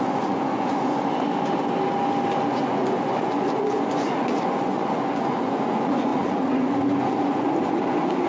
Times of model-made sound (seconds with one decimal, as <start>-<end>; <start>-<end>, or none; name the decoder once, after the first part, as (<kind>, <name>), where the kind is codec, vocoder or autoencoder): 0.0-1.0 (vocoder, Vocos); 2.5-8.3